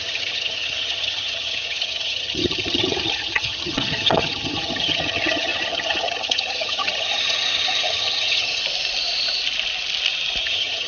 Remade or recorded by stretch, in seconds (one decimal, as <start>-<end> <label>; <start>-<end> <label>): 0.0-8.6 remade; 8.6-10.4 recorded; 10.4-10.9 remade